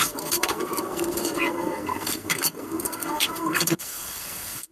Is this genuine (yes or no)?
no